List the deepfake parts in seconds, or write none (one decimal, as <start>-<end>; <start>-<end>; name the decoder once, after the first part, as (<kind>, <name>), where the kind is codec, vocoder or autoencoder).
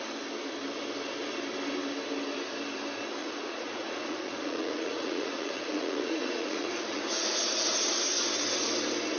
3.2-7.9 (vocoder, Vocos)